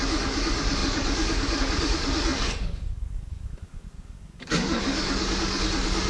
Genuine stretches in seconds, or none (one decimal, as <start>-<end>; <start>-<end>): none

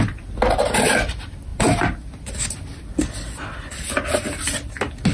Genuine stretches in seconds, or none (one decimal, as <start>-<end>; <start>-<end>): 0.0-5.1

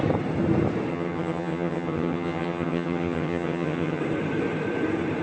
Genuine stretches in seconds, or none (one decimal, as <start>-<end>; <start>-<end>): 0.0-0.9; 4.0-5.2